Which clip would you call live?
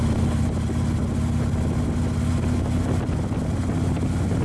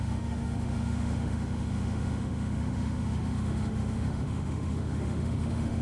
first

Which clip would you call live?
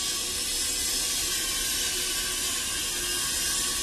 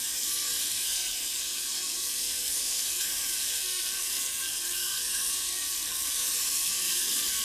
first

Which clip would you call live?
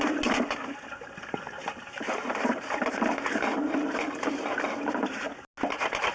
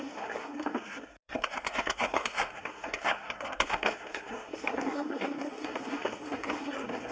first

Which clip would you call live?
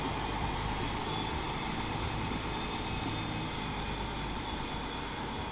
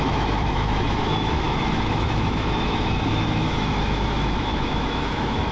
first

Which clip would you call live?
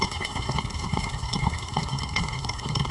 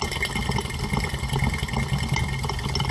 second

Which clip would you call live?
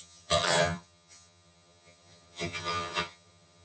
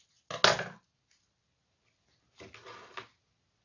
second